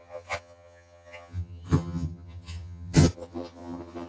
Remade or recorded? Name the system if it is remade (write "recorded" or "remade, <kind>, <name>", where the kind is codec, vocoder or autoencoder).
remade, vocoder, HiFi-GAN